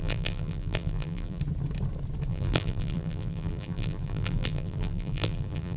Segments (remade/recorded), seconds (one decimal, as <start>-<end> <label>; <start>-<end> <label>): 0.0-1.4 remade; 1.4-2.3 recorded; 2.3-5.8 remade